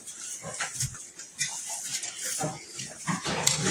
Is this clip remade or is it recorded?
recorded